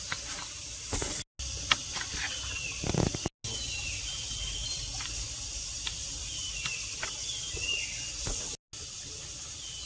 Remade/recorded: recorded